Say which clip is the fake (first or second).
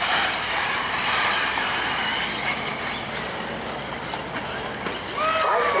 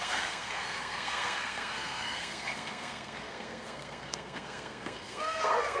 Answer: second